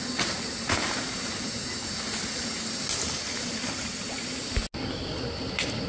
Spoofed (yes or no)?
no